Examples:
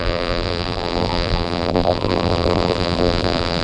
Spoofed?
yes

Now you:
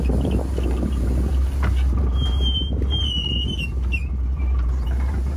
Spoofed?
yes